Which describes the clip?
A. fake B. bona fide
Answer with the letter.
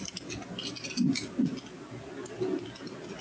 B